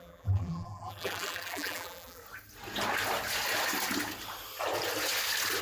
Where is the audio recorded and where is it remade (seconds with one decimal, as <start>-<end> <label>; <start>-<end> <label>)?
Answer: 0.0-2.2 remade; 2.2-5.6 recorded

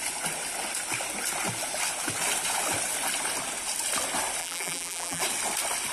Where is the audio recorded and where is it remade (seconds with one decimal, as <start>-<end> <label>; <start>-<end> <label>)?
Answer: 0.0-4.4 recorded; 4.4-5.2 remade; 5.2-5.9 recorded

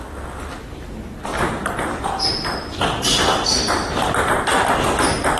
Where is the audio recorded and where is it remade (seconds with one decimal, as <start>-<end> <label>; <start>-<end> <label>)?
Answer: 0.0-1.3 recorded; 1.3-4.5 remade; 4.5-5.4 recorded

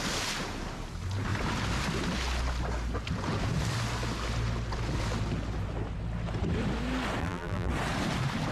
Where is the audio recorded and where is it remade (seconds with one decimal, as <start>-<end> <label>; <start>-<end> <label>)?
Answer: 0.0-7.2 recorded; 7.2-7.7 remade; 7.7-8.5 recorded

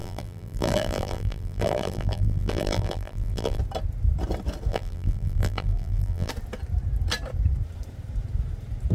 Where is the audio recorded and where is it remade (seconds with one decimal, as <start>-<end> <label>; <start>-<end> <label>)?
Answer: 0.0-3.6 remade; 3.6-4.7 recorded; 4.7-6.3 remade; 6.3-8.9 recorded